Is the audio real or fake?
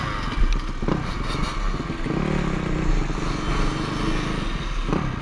real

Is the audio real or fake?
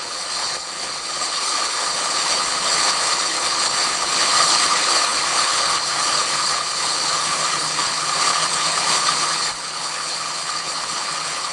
fake